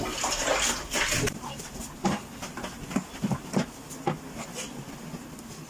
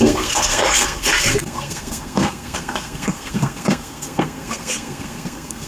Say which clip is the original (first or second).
first